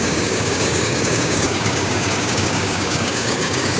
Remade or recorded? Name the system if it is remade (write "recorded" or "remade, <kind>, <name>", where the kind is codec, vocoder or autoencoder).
remade, codec, DAC